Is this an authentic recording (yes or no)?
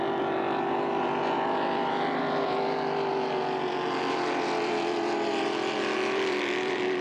no